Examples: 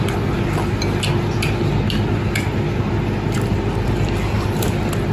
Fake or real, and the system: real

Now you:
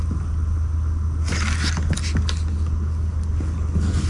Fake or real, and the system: real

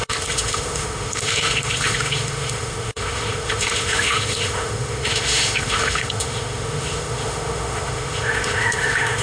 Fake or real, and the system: fake, autoencoder, DAC-VAE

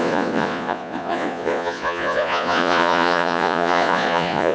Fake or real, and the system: fake, vocoder, Vocos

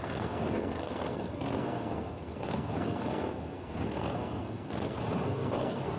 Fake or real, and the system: fake, codec, SNAC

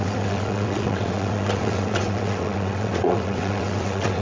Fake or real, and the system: fake, vocoder, WaveNeXt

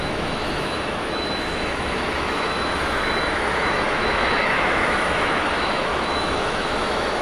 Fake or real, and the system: fake, autoencoder, DAC-VAE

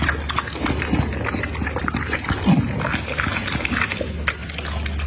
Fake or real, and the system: real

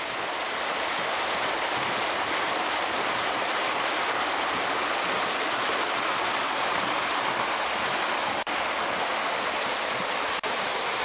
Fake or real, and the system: real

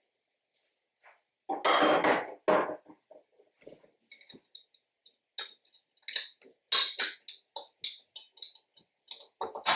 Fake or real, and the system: real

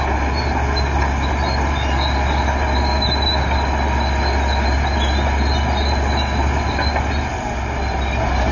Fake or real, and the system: real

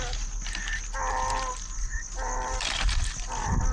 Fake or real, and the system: real